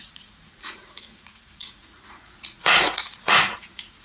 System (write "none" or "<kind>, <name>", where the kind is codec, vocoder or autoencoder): vocoder, Vocos